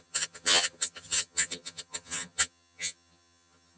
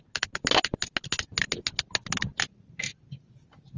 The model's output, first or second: first